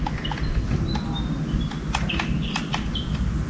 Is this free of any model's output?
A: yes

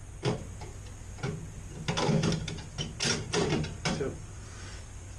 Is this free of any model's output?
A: yes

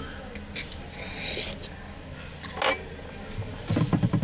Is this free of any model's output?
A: yes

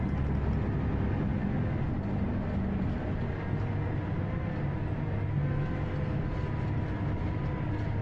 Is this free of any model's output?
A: yes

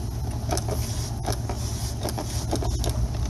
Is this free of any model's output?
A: yes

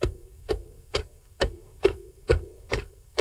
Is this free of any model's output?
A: no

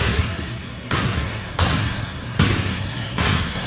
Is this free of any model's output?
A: no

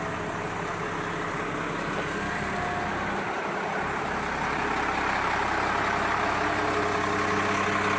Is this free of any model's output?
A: yes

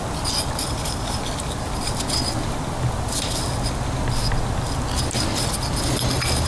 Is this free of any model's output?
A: yes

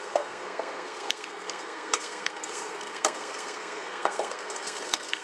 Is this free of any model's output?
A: no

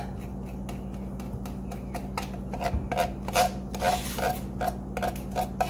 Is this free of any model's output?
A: yes